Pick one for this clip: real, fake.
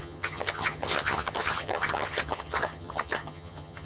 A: fake